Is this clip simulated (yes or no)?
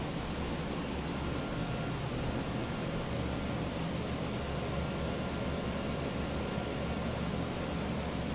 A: no